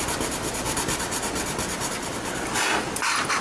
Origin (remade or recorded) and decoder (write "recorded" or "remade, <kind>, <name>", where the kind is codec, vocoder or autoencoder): recorded